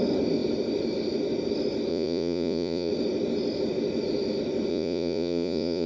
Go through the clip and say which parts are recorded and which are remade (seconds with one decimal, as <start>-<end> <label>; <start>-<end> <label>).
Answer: 0.0-1.9 recorded; 1.9-2.9 remade; 2.9-4.7 recorded; 4.7-5.9 remade